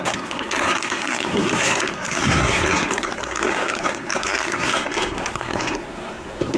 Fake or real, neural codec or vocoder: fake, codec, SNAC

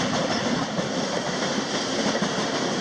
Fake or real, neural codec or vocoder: fake, vocoder, BigVGAN v2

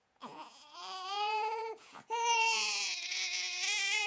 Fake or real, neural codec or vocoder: fake, vocoder, Vocos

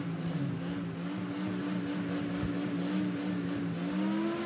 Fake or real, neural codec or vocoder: real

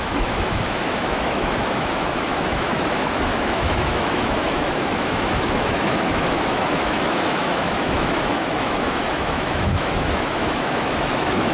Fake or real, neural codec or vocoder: fake, autoencoder, DAC-VAE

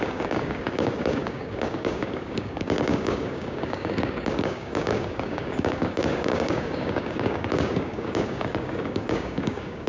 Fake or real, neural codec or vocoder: fake, codec, DAC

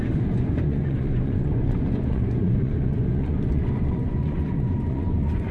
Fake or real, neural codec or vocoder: fake, vocoder, Vocos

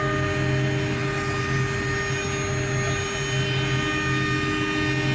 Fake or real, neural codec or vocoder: real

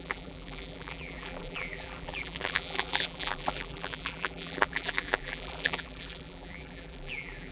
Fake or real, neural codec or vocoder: fake, vocoder, BigVGAN v2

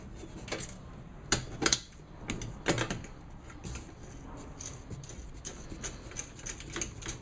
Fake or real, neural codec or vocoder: real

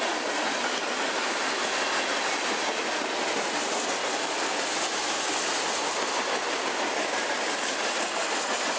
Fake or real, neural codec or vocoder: real